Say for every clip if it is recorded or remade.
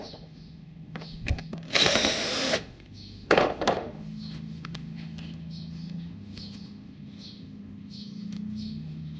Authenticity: remade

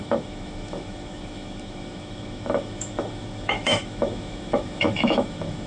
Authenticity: remade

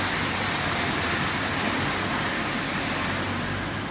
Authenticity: recorded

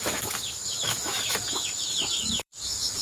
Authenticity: remade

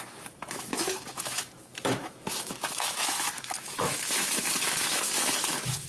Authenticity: remade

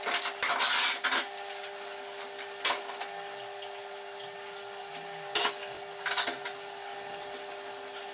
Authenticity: recorded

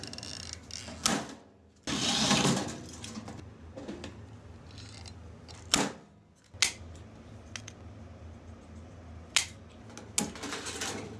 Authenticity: recorded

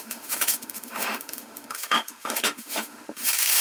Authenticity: remade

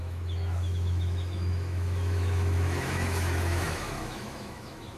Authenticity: remade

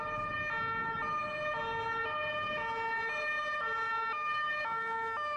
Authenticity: recorded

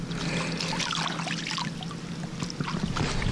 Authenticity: recorded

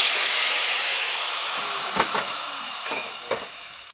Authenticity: remade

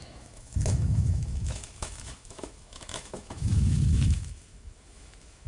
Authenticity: remade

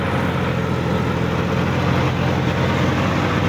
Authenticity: recorded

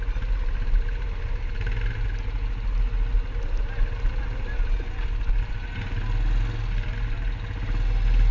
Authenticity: recorded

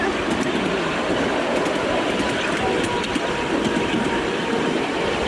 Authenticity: recorded